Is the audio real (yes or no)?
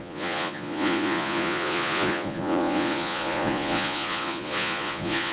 no